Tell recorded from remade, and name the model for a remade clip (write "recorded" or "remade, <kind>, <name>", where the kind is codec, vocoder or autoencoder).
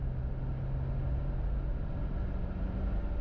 recorded